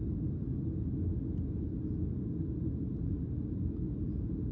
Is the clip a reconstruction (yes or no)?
no